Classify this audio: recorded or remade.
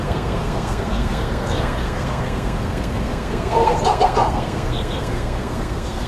remade